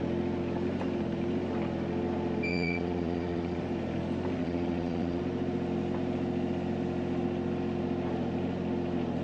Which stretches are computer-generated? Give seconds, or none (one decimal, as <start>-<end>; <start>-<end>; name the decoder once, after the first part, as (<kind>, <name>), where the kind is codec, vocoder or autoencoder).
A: 2.5-3.6 (vocoder, Vocos); 4.4-5.2